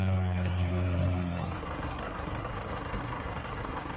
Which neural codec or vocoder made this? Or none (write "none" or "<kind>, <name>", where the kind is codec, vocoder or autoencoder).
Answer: codec, SNAC